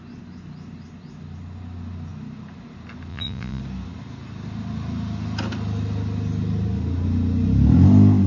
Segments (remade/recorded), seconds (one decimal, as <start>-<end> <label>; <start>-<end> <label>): 0.0-3.1 recorded; 3.1-3.6 remade; 3.6-8.3 recorded